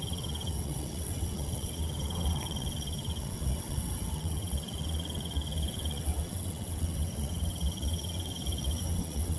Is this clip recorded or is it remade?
remade